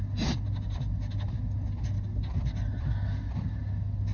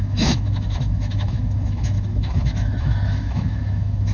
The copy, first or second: second